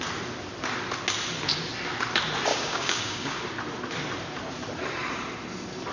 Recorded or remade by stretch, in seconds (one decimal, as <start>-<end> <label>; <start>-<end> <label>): 0.0-2.5 recorded; 2.5-3.4 remade; 3.4-5.9 recorded